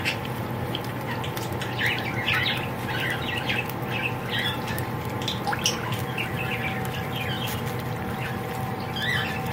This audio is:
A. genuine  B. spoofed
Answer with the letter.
A